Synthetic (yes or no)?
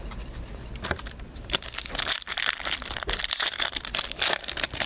yes